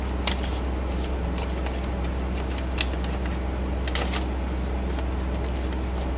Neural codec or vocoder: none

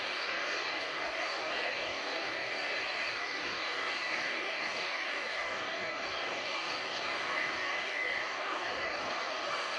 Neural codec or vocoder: codec, DAC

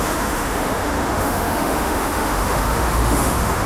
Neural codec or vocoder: autoencoder, DAC-VAE